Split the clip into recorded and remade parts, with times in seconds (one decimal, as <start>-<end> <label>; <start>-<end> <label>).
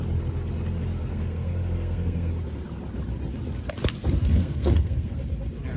0.0-1.1 recorded; 1.1-2.3 remade; 2.3-4.2 recorded; 4.2-5.2 remade; 5.2-5.8 recorded